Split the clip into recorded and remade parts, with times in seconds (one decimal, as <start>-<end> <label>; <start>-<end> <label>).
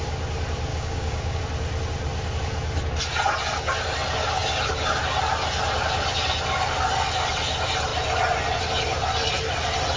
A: 0.0-0.7 recorded; 0.7-1.4 remade; 1.4-10.0 recorded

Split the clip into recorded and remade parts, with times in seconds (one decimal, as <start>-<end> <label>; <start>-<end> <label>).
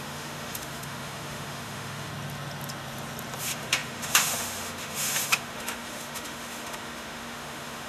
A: 0.0-2.1 remade; 2.1-3.4 recorded; 3.4-7.9 remade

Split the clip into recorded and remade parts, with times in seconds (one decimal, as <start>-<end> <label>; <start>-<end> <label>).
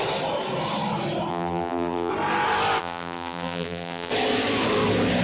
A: 0.0-1.3 recorded; 1.3-2.1 remade; 2.1-2.8 recorded; 2.8-4.1 remade; 4.1-5.2 recorded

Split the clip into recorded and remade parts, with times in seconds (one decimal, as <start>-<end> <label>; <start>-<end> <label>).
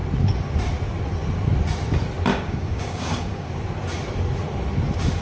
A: 0.0-2.3 recorded; 2.3-3.5 remade; 3.5-5.2 recorded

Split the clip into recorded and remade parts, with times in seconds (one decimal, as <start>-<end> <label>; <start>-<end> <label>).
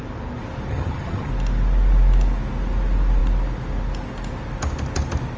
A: 0.0-0.7 recorded; 0.7-1.3 remade; 1.3-5.4 recorded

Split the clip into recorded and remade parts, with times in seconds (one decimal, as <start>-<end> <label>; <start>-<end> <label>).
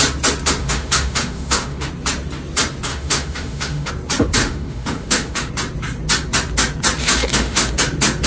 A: 0.0-0.6 recorded; 0.6-1.9 remade; 1.9-2.9 recorded; 2.9-3.9 remade; 3.9-4.4 recorded; 4.4-5.5 remade; 5.5-7.0 recorded; 7.0-7.7 remade; 7.7-8.3 recorded